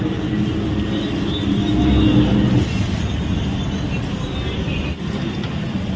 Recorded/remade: recorded